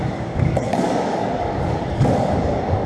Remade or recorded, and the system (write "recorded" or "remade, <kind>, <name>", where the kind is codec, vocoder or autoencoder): remade, codec, DAC